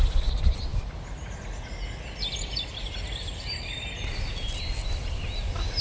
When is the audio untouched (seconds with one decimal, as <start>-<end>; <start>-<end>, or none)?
0.0-5.8